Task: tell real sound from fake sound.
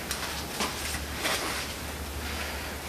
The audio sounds real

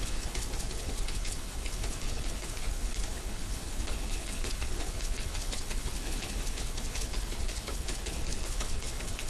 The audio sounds fake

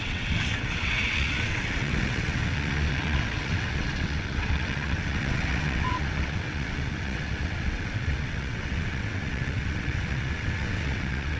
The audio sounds fake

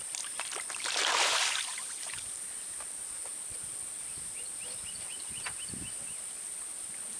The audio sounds fake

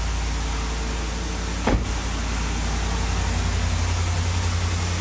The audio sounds real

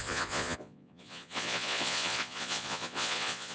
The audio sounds fake